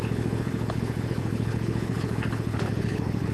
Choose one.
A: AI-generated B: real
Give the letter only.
A